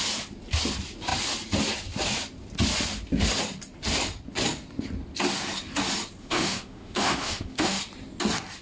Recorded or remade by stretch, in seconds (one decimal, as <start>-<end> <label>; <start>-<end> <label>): 0.0-6.2 recorded; 6.2-7.8 remade; 7.8-8.6 recorded